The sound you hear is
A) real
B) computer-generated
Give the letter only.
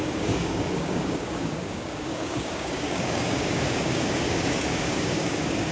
B